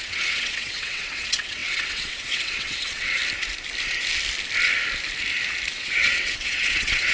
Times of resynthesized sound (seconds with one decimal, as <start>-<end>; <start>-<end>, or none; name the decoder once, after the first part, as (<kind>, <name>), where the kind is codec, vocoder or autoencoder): 0.0-3.2 (vocoder, WaveNeXt); 5.7-7.1